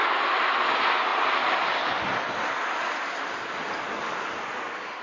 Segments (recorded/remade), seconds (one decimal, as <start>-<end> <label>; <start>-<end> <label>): 0.0-5.0 recorded